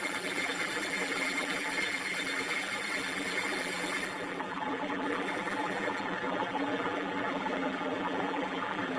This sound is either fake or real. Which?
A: fake